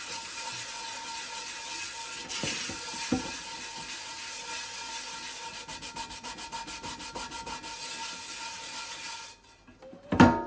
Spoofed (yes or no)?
no